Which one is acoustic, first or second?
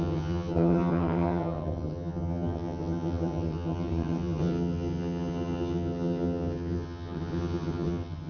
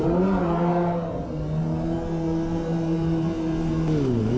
second